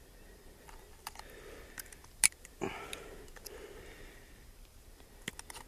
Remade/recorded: recorded